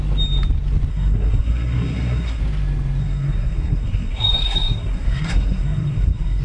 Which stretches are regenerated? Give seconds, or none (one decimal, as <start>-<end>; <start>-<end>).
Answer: 0.9-2.4; 3.0-6.4